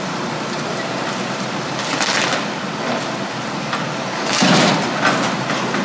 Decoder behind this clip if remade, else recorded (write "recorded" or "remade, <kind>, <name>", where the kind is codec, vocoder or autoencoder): recorded